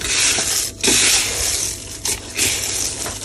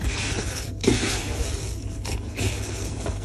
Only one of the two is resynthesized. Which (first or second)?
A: second